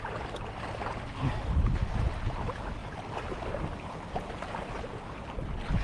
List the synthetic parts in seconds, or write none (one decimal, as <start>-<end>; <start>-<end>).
none